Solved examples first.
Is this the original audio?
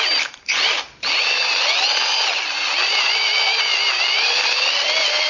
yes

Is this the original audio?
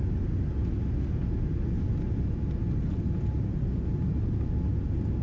yes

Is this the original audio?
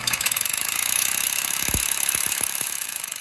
no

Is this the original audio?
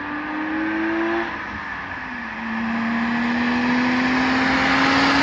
yes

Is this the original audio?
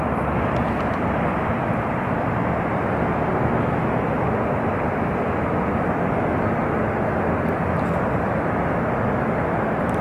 yes